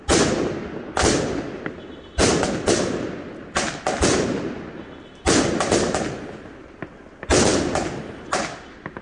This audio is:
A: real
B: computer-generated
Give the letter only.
A